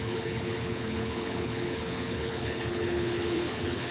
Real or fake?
fake